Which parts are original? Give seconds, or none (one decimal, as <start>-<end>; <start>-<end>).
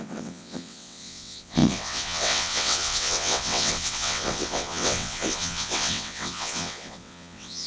none